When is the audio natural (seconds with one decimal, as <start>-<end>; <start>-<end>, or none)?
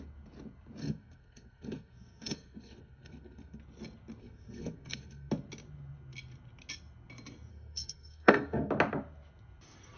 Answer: 0.0-0.8; 3.6-4.2; 5.3-7.5; 8.7-10.0